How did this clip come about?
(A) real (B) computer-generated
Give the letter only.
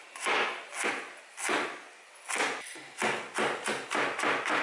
A